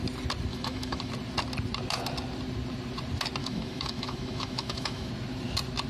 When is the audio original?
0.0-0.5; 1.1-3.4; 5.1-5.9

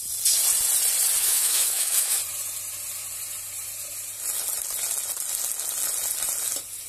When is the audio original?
0.0-1.2; 2.2-6.9

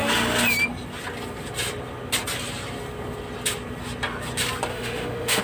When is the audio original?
0.0-4.7

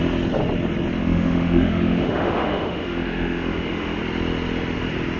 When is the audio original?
0.0-1.0; 4.0-5.2